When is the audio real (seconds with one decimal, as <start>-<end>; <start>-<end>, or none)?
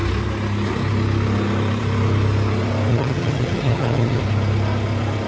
0.0-2.9; 4.2-5.3